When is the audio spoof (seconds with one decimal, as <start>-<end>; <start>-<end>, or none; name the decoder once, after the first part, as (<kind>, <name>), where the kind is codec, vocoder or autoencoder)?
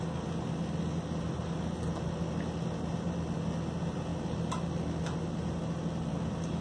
none